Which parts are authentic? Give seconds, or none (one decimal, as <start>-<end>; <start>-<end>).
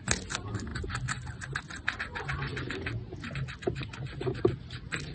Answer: 0.0-5.1